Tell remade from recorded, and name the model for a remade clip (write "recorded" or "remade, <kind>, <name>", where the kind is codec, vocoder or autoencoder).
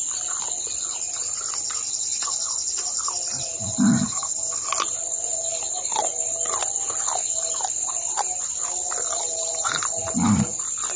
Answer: recorded